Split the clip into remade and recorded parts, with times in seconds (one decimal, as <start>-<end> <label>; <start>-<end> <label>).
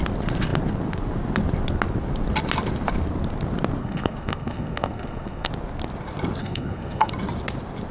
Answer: 0.0-3.8 recorded; 3.8-5.5 remade; 5.5-6.4 recorded; 6.4-7.1 remade; 7.1-7.9 recorded